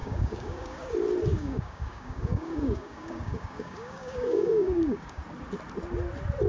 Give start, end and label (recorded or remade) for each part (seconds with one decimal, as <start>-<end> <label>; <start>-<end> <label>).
0.0-0.9 remade; 0.9-1.3 recorded; 1.3-5.2 remade; 5.2-6.5 recorded